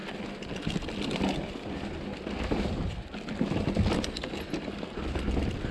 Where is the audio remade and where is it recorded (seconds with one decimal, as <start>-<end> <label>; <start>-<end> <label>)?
0.0-5.7 recorded